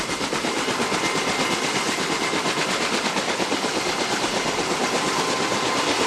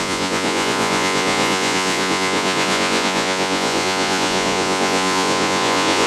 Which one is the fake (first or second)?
second